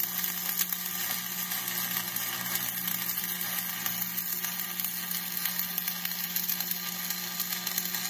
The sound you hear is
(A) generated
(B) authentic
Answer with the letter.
B